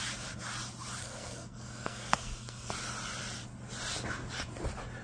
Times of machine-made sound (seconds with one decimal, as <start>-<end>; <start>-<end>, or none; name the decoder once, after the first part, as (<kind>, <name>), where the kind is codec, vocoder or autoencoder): 1.0-2.7 (codec, SNAC)